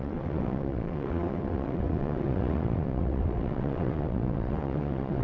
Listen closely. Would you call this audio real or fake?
fake